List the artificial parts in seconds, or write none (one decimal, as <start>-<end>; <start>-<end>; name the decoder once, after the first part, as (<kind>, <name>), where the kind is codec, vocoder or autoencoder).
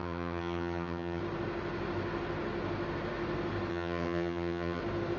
0.0-1.2 (vocoder, HiFi-GAN); 3.7-4.8